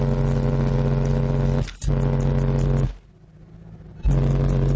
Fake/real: real